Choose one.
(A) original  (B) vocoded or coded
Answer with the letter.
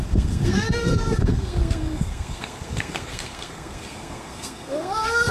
B